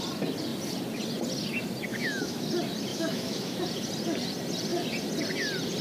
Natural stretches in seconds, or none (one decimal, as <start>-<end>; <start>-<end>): 0.0-1.9; 2.4-2.9; 3.6-5.8